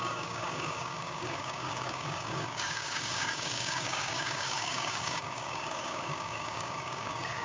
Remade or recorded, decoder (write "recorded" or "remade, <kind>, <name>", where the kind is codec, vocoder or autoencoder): remade, codec, DAC